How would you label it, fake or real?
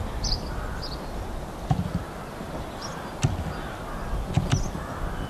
real